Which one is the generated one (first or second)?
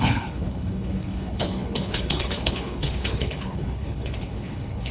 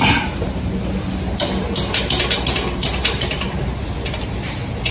first